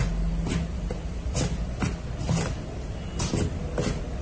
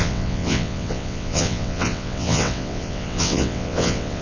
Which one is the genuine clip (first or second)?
first